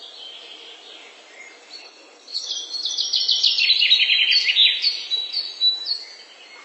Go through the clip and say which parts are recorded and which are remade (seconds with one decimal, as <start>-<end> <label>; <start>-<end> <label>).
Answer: 0.0-1.8 recorded; 1.8-2.5 remade; 2.5-6.6 recorded